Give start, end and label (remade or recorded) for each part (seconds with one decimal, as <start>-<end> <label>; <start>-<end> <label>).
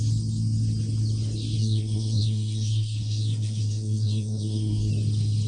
0.0-1.6 recorded; 1.6-4.9 remade; 4.9-5.5 recorded